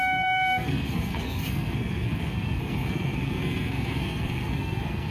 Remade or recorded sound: remade